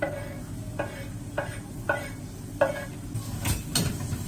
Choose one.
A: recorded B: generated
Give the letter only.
A